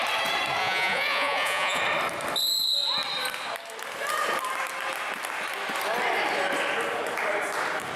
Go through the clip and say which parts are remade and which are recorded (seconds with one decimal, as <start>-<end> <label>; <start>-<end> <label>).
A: 0.0-0.6 recorded; 0.6-1.8 remade; 1.8-8.0 recorded